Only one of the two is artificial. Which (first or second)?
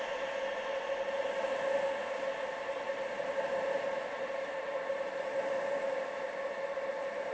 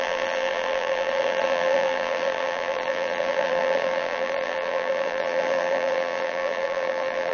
second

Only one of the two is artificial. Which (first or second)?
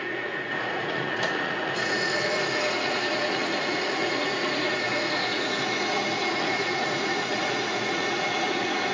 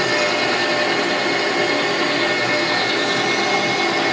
first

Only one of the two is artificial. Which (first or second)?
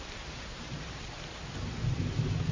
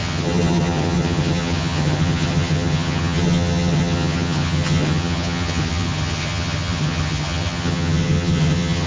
second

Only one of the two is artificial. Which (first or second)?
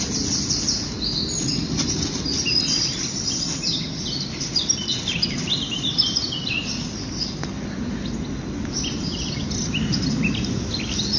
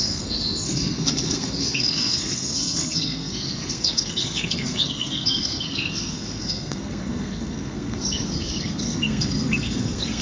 second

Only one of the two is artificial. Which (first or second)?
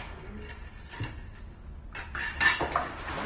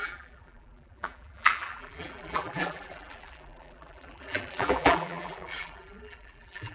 second